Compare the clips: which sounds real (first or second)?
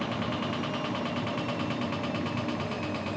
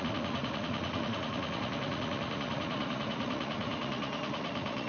first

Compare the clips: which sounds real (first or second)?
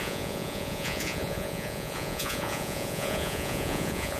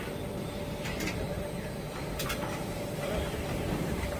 second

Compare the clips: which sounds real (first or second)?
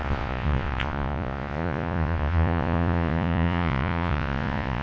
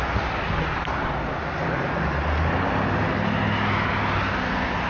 second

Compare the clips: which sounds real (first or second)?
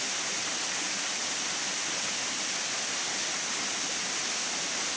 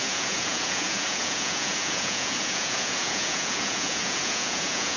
first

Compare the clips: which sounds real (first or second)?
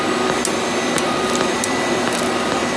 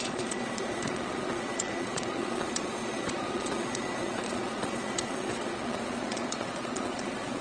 first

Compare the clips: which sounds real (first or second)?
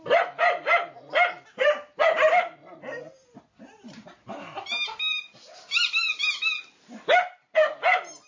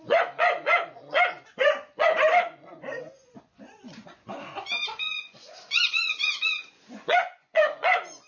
first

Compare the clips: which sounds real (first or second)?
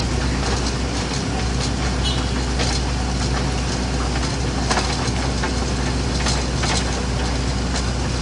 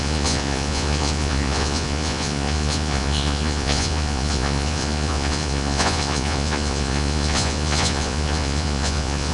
first